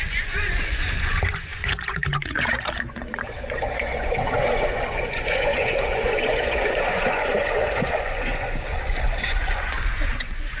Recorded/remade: remade